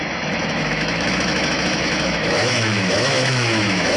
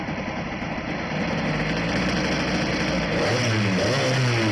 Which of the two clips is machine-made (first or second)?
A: first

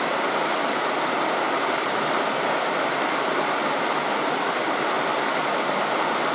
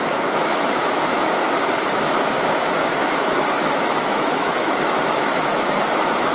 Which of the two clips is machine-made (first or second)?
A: second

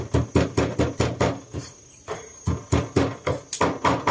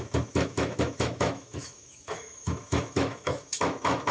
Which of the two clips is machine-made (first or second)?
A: second